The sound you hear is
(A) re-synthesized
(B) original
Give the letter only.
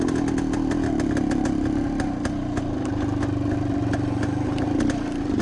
B